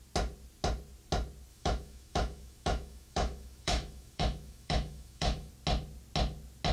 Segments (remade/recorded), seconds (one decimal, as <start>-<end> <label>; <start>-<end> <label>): 0.0-1.5 recorded; 1.5-5.5 remade; 5.5-6.7 recorded